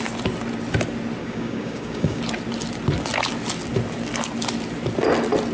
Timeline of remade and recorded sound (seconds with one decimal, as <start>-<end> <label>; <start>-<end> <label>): 0.0-1.2 recorded; 1.2-2.2 remade; 2.2-5.5 recorded